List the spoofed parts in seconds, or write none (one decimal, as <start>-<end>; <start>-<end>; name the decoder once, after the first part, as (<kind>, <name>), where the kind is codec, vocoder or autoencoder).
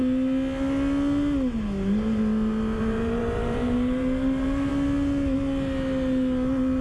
2.8-4.7 (vocoder, BigVGAN v2)